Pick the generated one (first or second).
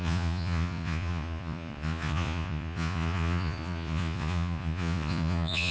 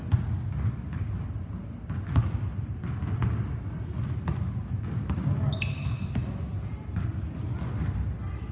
first